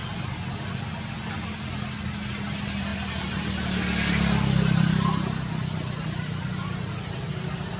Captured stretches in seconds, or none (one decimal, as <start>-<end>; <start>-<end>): 0.0-7.8